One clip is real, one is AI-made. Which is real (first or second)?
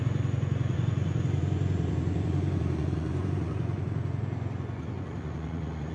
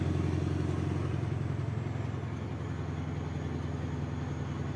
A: second